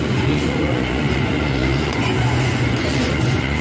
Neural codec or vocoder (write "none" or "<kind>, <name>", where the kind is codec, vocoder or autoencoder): vocoder, Vocos